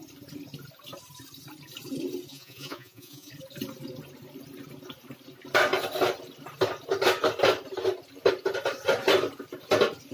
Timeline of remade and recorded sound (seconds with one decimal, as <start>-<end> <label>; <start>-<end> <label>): 0.0-2.3 recorded; 2.3-3.3 remade; 3.3-10.1 recorded

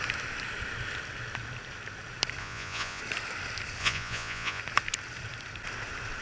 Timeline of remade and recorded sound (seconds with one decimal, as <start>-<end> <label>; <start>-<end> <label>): 0.0-2.4 recorded; 2.4-3.0 remade; 3.0-3.8 recorded; 3.8-4.6 remade; 4.6-6.2 recorded

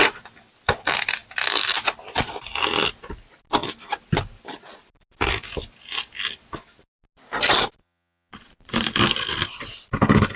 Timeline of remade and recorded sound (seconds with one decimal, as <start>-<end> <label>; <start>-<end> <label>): 0.0-7.8 recorded; 7.8-8.9 remade; 8.9-10.4 recorded

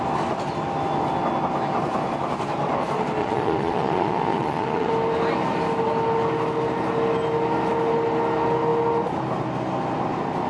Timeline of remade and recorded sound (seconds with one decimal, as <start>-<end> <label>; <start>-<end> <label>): 0.0-3.2 recorded; 3.2-4.9 remade; 4.9-10.5 recorded